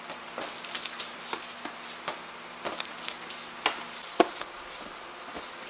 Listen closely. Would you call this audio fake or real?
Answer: real